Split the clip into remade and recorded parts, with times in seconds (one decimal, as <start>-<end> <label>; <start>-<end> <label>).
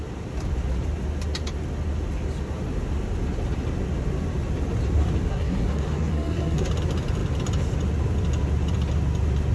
0.0-5.3 recorded; 5.3-6.7 remade; 6.7-9.5 recorded